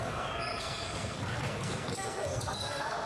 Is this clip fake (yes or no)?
yes